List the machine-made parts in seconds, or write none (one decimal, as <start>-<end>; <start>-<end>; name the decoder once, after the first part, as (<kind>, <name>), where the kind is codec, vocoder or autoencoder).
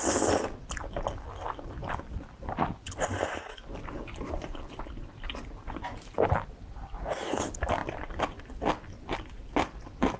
none